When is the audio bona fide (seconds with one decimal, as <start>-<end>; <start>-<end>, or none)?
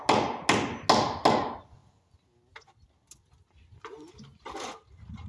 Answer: 0.0-5.3